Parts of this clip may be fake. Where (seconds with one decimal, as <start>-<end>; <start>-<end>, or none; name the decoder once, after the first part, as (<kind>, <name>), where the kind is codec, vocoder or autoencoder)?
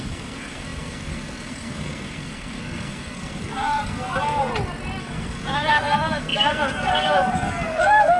0.0-4.5 (codec, SNAC); 5.0-8.2